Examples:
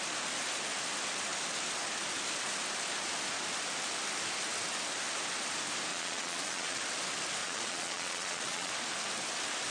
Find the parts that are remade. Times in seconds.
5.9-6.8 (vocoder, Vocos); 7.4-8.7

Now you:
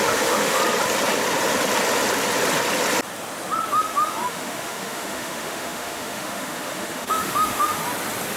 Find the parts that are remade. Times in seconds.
0.0-0.6 (autoencoder, DAC-VAE); 3.7-7.8

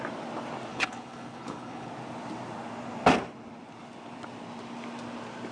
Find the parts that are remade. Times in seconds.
0.7-1.9 (codec, HILCodec)